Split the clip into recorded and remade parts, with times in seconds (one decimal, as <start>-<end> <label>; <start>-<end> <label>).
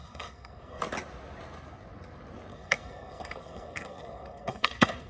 0.0-0.8 remade; 0.8-2.5 recorded; 2.5-5.1 remade